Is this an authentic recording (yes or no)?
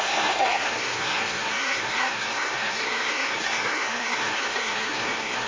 no